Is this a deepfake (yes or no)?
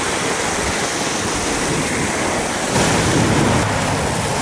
no